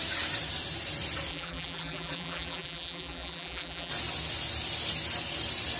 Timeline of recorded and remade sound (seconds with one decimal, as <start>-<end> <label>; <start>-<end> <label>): 0.0-1.3 recorded; 1.3-3.9 remade; 3.9-5.8 recorded